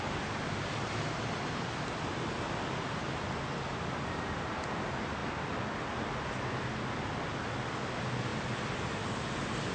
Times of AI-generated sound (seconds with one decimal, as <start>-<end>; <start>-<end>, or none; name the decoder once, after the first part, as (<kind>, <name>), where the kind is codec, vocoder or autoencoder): 5.2-6.0 (vocoder, BigVGAN v2)